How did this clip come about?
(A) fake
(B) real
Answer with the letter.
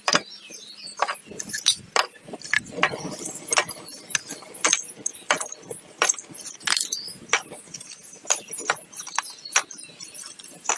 B